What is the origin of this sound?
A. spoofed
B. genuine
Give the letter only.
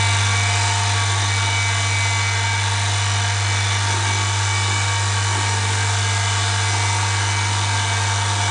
B